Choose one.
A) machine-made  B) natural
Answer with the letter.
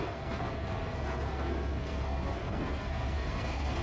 A